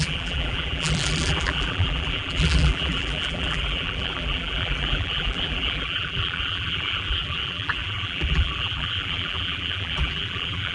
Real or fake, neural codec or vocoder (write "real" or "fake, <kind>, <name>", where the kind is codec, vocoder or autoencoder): fake, vocoder, BigVGAN v2